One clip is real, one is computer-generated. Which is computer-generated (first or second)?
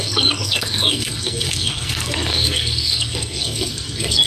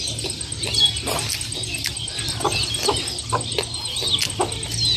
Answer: first